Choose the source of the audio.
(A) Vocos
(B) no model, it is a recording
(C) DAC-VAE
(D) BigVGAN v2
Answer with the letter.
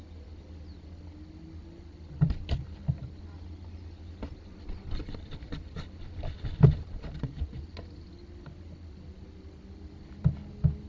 B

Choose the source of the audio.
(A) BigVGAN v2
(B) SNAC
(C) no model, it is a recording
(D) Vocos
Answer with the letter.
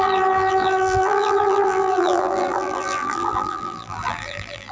A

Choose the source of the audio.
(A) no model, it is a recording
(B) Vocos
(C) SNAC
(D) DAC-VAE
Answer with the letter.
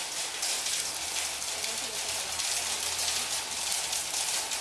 A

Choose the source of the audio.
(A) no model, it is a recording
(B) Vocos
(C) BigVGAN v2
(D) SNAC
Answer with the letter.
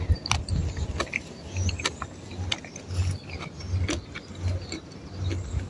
A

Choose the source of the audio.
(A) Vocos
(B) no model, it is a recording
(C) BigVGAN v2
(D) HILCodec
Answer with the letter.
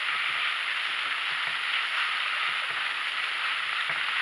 B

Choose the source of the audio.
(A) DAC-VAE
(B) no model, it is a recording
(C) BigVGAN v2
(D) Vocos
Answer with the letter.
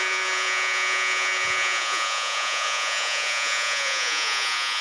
D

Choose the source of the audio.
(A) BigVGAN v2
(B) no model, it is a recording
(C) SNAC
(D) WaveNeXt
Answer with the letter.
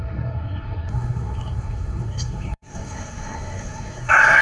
C